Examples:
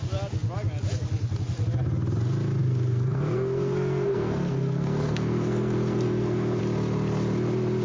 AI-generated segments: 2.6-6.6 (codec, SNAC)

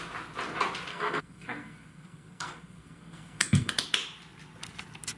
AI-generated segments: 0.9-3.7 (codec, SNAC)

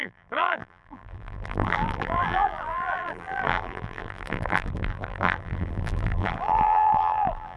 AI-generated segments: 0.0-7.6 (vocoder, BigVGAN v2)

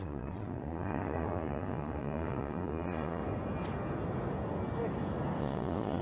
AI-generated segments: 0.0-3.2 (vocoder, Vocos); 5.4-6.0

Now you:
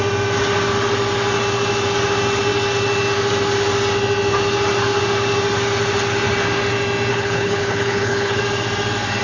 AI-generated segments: 7.1-8.4 (codec, HILCodec)

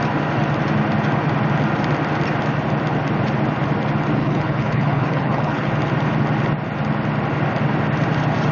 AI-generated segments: 4.2-5.7 (codec, HILCodec)

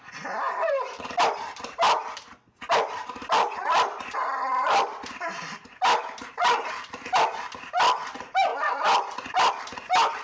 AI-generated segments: 0.6-3.4 (vocoder, BigVGAN v2); 4.5-7.4; 8.5-9.5